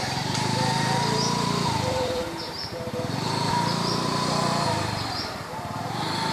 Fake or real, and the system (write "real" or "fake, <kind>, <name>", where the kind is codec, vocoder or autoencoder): fake, vocoder, BigVGAN v2